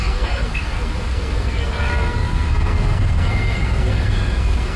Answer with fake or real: fake